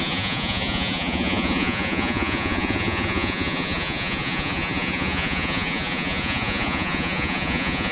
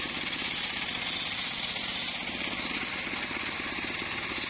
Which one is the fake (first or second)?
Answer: first